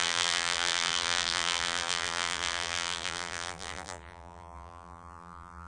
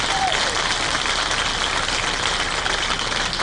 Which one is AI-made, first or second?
first